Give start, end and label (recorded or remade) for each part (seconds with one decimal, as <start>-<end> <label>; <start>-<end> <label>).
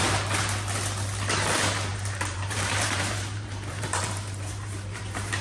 0.0-1.9 recorded; 1.9-5.4 remade